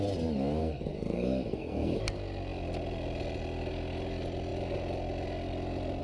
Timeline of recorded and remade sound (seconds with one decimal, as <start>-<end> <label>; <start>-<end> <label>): 0.0-0.6 recorded; 0.6-2.0 remade; 2.0-6.0 recorded